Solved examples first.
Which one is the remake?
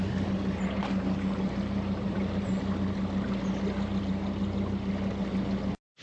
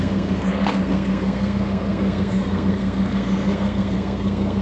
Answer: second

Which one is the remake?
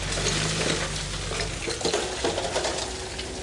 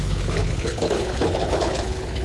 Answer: second